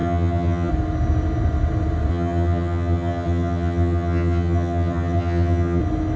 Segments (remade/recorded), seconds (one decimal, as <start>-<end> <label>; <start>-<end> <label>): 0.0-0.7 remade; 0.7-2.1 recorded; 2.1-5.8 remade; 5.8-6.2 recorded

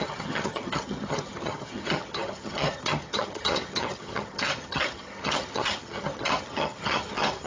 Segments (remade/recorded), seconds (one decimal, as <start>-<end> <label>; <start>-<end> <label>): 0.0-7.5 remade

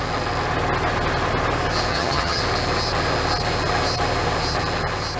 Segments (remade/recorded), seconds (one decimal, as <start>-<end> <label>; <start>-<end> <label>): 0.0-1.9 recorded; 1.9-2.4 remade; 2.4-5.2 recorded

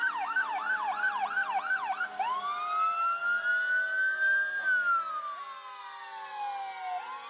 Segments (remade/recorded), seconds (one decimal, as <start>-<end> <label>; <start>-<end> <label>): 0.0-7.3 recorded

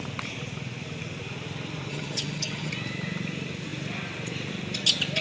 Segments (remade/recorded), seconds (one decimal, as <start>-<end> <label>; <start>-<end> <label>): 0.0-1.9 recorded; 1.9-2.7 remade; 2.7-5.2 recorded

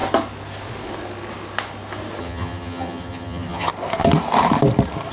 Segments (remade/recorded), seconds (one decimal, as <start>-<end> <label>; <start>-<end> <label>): 0.0-2.2 recorded; 2.2-3.7 remade; 3.7-5.1 recorded

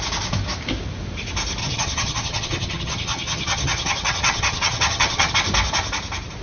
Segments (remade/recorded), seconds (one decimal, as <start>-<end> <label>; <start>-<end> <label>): 0.0-1.6 recorded; 1.6-5.3 remade; 5.3-6.4 recorded

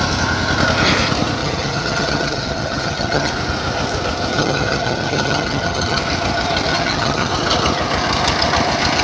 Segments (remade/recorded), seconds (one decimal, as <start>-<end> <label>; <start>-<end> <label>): 0.0-1.4 recorded; 1.4-3.3 remade; 3.3-4.3 recorded; 4.3-6.0 remade; 6.0-6.7 recorded; 6.7-7.3 remade; 7.3-9.0 recorded